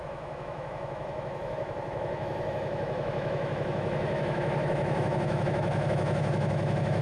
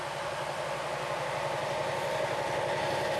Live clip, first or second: second